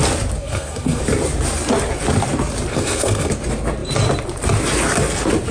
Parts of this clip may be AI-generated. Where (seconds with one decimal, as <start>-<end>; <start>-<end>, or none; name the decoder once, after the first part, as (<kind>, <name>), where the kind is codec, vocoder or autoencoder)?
0.4-1.0 (codec, SNAC); 2.7-3.3